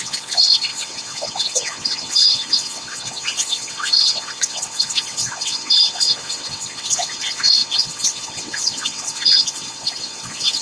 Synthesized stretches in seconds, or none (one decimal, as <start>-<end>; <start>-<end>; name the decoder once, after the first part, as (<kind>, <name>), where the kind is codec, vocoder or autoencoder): 0.0-10.6 (vocoder, WaveNeXt)